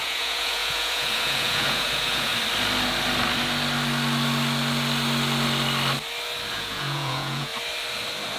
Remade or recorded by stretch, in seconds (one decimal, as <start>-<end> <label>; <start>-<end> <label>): 0.0-2.3 remade; 2.3-6.5 recorded; 6.5-7.5 remade; 7.5-8.4 recorded